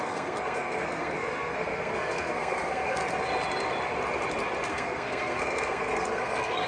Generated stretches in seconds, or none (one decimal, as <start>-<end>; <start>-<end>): 0.0-3.0; 4.7-6.7